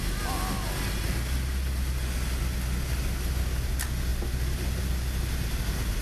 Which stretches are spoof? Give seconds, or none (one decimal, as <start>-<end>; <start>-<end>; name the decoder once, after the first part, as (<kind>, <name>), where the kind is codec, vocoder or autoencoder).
none